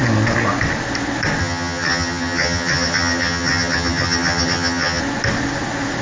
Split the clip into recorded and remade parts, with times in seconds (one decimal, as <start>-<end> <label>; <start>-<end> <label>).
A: 0.0-1.4 recorded; 1.4-5.0 remade; 5.0-6.0 recorded